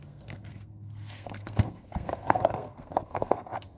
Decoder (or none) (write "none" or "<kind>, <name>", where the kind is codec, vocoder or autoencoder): codec, SNAC